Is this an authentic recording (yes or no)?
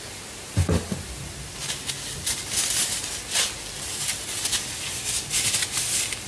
yes